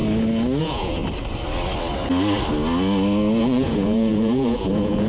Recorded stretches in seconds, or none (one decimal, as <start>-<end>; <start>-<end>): 0.0-0.6; 1.0-3.4